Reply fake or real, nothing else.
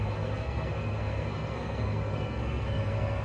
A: fake